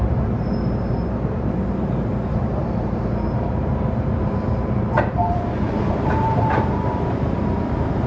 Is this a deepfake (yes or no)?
yes